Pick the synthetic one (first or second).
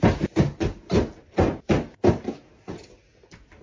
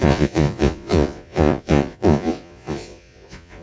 second